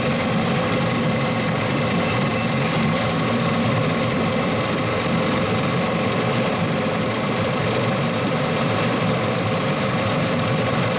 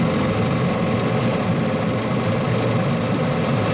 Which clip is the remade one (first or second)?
first